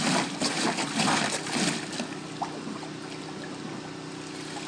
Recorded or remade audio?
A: recorded